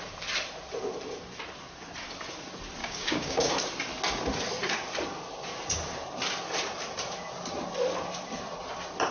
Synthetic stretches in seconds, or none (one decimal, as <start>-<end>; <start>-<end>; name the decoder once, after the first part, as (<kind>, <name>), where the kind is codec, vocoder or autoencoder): 2.8-3.5 (codec, DAC)